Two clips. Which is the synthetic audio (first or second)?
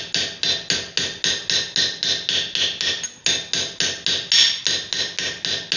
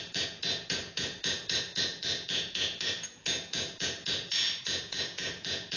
second